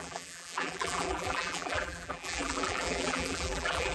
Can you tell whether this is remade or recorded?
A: remade